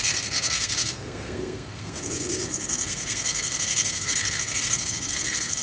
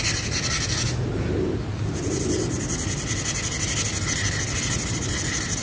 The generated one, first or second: first